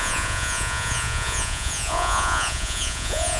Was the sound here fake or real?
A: fake